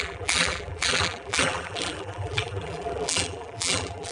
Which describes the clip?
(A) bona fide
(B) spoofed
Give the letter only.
B